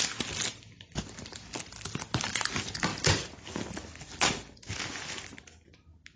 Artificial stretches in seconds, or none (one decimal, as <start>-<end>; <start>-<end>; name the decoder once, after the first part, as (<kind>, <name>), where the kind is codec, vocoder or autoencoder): none